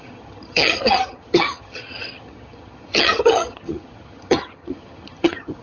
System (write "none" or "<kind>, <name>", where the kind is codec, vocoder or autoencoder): vocoder, HiFi-GAN